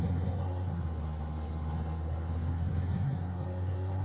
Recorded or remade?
remade